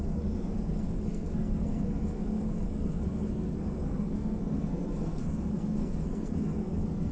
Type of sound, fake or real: fake